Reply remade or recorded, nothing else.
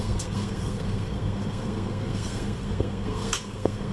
remade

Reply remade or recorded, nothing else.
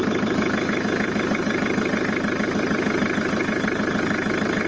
recorded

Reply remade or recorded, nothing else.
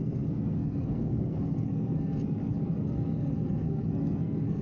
remade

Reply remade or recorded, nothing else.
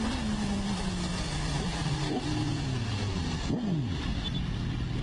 recorded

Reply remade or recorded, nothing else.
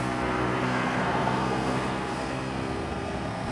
remade